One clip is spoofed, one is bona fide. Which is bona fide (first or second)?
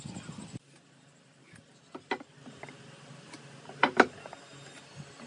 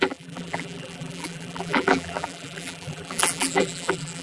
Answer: first